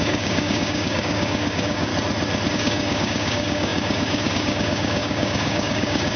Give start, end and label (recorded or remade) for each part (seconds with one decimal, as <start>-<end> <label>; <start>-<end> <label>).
0.0-1.9 remade; 1.9-2.5 recorded; 2.5-6.2 remade